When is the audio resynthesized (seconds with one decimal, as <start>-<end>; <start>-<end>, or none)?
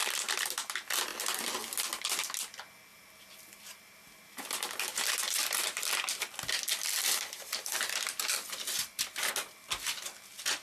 2.9-5.9